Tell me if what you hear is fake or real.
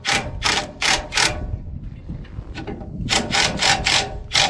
fake